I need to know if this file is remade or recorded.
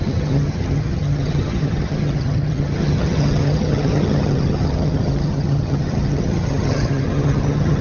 remade